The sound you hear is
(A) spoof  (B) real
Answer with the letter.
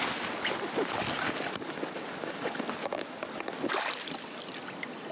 B